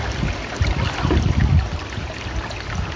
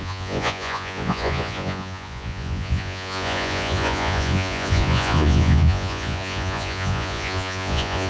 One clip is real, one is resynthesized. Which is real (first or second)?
first